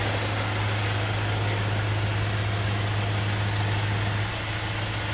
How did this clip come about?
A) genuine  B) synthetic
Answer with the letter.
A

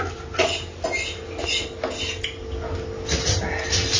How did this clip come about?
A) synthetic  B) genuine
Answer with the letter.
B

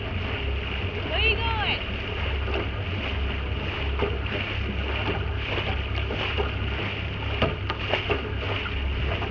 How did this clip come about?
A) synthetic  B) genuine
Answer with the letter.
B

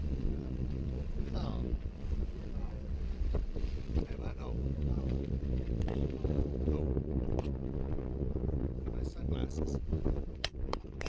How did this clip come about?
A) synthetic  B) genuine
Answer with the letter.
A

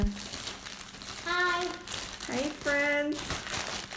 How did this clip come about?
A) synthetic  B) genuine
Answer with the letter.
B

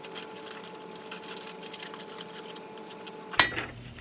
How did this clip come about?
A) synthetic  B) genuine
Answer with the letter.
B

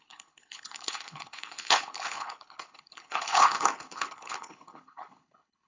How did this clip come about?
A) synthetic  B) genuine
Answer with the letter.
A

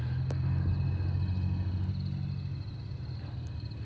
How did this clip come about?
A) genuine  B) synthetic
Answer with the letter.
A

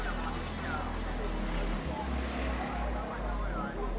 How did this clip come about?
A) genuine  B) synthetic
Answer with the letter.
A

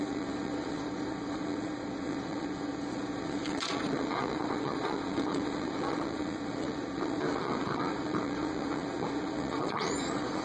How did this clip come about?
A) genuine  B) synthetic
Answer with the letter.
B